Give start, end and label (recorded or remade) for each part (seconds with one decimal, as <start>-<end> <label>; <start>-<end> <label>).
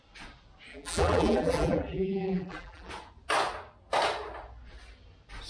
0.0-0.7 recorded; 0.7-2.9 remade; 2.9-5.5 recorded